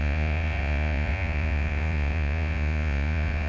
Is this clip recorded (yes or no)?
no